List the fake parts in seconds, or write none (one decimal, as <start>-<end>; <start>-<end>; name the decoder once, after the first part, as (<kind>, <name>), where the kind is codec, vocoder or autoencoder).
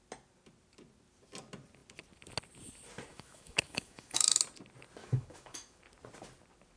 3.1-4.4 (autoencoder, DAC-VAE); 5.0-5.8